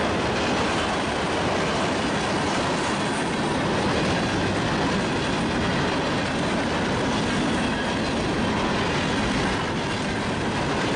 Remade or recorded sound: recorded